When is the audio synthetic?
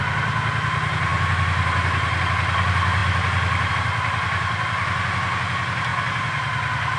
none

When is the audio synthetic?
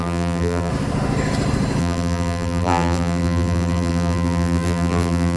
0.0-0.7 (vocoder, BigVGAN v2); 1.8-5.4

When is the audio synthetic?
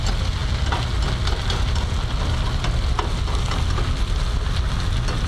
none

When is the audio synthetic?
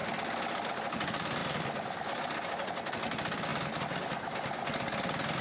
0.7-3.5 (vocoder, BigVGAN v2); 4.6-5.4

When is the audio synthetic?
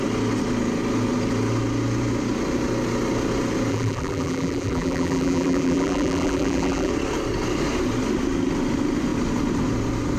3.7-6.9 (vocoder, BigVGAN v2)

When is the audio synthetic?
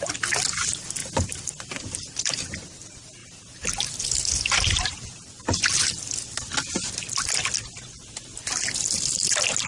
1.0-2.3 (vocoder, BigVGAN v2)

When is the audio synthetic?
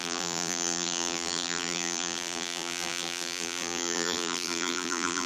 0.0-5.3 (vocoder, BigVGAN v2)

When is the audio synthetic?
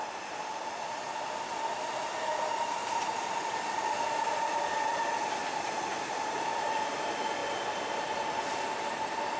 0.0-1.0 (vocoder, BigVGAN v2); 5.4-6.9